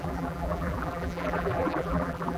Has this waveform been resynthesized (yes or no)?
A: yes